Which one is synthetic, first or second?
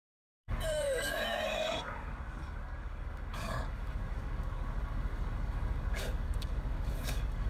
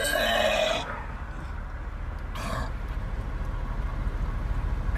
first